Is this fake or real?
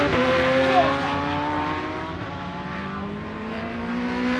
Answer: fake